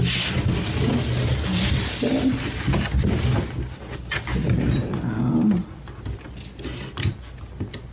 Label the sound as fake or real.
real